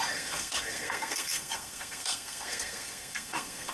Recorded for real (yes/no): no